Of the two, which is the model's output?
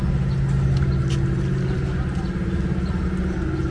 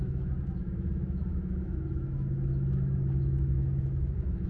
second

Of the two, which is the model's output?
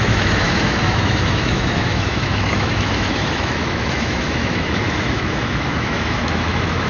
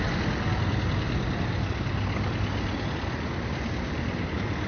first